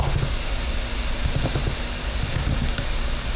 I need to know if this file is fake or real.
real